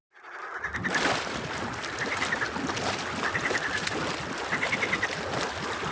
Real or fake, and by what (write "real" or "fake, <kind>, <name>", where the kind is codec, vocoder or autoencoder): real